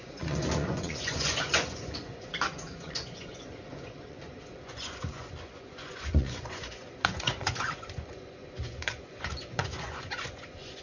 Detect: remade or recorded remade